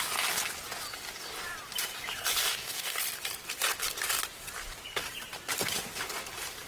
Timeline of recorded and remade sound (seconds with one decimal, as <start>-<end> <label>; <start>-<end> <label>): 0.0-2.4 recorded; 2.4-3.0 remade; 3.0-6.7 recorded